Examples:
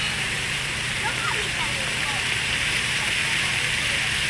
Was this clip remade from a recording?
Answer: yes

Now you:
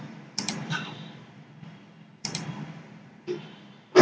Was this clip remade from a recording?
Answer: yes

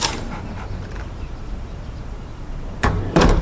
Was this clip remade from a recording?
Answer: yes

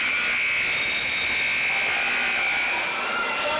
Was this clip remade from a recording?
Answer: yes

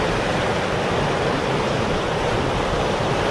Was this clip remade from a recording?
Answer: no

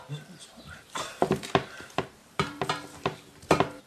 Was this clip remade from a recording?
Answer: yes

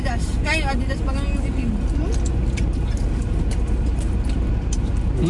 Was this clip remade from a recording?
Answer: no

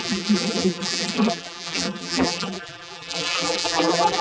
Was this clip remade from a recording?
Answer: yes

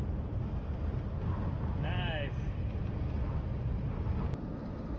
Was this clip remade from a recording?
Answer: no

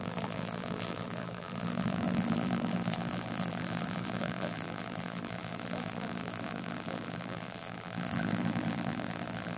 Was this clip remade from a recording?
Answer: yes